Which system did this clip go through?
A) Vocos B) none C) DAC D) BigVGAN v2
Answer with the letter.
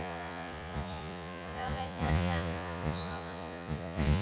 A